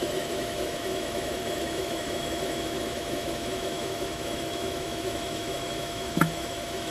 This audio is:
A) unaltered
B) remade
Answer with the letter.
B